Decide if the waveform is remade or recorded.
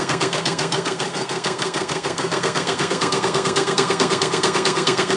remade